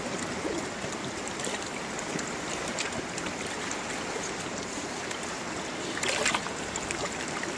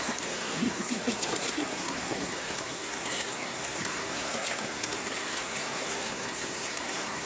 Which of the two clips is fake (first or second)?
second